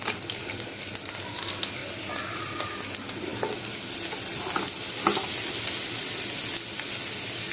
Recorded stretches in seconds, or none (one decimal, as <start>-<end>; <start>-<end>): 0.0-7.5

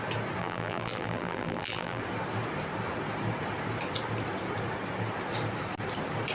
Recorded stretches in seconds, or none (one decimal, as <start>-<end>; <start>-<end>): 0.0-0.4; 2.0-6.3